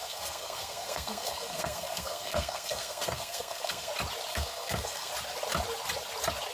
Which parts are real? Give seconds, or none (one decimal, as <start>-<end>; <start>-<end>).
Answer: 3.9-4.3; 5.1-6.5